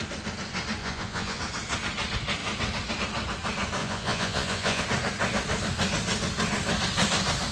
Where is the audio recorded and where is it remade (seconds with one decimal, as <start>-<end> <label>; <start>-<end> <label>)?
0.0-0.8 recorded; 0.8-1.4 remade; 1.4-3.8 recorded; 3.8-4.8 remade; 4.8-7.5 recorded

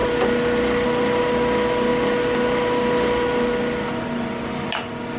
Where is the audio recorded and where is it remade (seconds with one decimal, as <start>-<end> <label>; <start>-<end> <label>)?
0.0-5.2 recorded

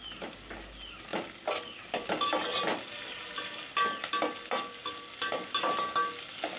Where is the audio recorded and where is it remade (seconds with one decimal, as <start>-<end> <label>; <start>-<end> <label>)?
0.0-6.6 recorded

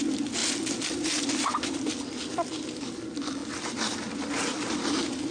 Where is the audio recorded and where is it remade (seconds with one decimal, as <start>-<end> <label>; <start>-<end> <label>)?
0.0-5.3 recorded

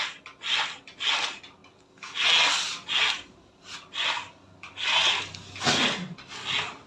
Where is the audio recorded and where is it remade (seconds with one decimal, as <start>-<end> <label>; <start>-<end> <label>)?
0.0-6.9 recorded

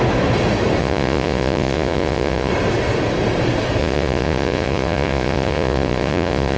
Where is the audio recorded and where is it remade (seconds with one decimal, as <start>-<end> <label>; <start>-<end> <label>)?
0.0-0.8 recorded; 0.8-2.5 remade; 2.5-3.8 recorded; 3.8-6.6 remade

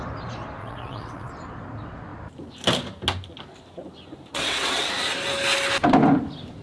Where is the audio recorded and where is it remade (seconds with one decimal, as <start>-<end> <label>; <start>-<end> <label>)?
0.0-0.6 recorded; 0.6-1.3 remade; 1.3-4.3 recorded; 4.3-4.9 remade; 4.9-6.6 recorded

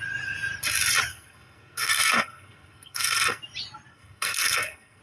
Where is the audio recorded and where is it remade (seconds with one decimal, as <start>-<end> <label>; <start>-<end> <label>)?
0.0-1.1 recorded; 1.1-3.4 remade; 3.4-3.9 recorded; 3.9-5.0 remade